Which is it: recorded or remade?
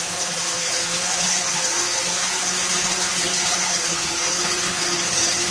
remade